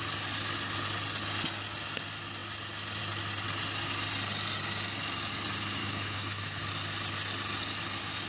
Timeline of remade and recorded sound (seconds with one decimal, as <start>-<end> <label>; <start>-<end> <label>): 0.0-5.8 recorded; 5.8-6.6 remade; 6.6-8.3 recorded

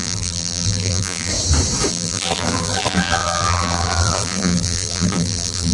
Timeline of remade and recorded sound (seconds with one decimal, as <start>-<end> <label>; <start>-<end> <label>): 0.0-1.3 remade; 1.3-1.9 recorded; 1.9-5.7 remade

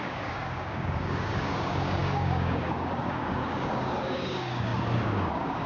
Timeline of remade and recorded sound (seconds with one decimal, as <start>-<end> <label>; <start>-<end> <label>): 0.0-5.7 remade

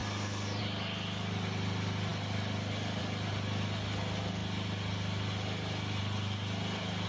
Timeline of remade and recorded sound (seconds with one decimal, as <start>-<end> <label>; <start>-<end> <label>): 0.0-7.1 recorded

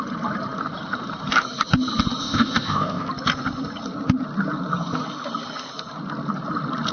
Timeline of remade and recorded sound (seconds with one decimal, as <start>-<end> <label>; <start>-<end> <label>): 0.0-2.2 recorded; 2.2-3.1 remade; 3.1-6.9 recorded

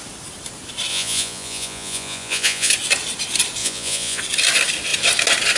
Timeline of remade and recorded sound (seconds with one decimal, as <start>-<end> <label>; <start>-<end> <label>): 0.0-0.9 recorded; 0.9-2.7 remade; 2.7-3.6 recorded; 3.6-4.2 remade; 4.2-5.6 recorded

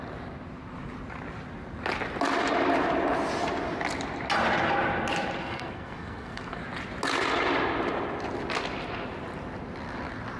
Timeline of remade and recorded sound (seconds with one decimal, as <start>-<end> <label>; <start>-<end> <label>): 0.0-5.4 recorded; 5.4-6.6 remade; 6.6-10.4 recorded